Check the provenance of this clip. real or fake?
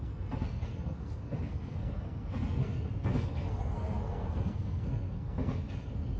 fake